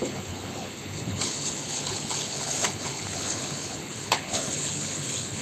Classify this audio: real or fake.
fake